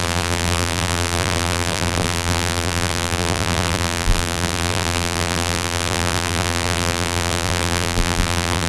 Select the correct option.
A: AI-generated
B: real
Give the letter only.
A